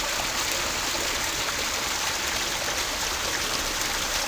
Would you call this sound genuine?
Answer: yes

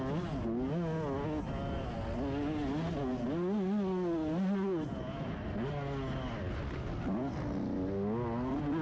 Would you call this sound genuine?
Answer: yes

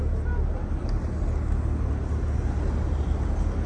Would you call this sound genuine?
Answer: yes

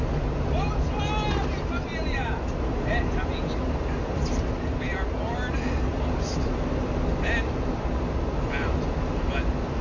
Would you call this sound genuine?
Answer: yes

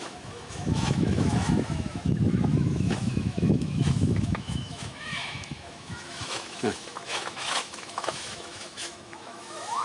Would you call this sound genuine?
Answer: no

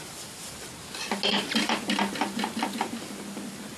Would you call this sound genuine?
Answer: yes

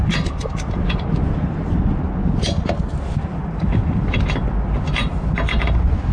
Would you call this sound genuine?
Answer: yes